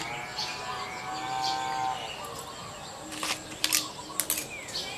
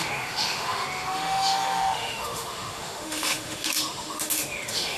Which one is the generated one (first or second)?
second